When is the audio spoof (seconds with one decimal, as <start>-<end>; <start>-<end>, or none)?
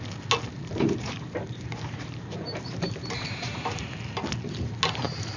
0.6-3.8